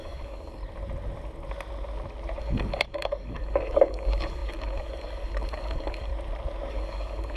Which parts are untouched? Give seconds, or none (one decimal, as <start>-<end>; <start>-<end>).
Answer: 0.6-2.4; 6.1-6.7